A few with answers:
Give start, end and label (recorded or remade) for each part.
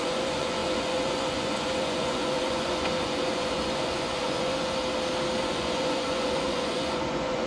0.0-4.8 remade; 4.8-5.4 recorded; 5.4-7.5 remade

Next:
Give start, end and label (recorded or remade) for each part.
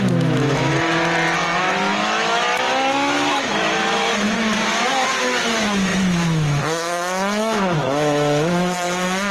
0.0-0.7 remade; 0.7-1.6 recorded; 1.6-9.3 remade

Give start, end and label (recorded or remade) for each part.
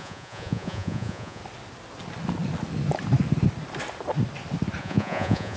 0.0-1.4 remade; 1.4-4.8 recorded; 4.8-5.6 remade